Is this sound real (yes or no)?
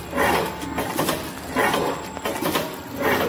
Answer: yes